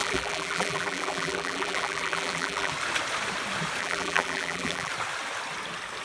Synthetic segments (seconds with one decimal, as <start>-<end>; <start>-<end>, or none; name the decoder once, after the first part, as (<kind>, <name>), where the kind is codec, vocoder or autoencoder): 0.0-2.7 (vocoder, BigVGAN v2); 3.8-4.9